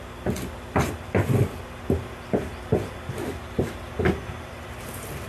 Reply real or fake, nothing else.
real